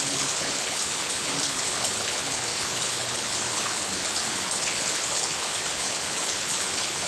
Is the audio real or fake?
fake